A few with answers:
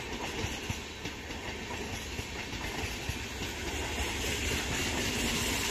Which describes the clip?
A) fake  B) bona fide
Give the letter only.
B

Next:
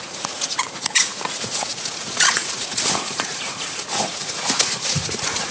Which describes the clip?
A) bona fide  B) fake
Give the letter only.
B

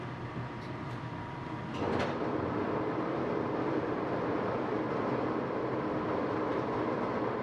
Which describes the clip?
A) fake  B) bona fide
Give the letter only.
A